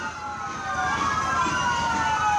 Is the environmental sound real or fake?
real